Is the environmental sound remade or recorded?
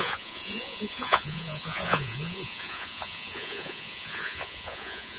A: remade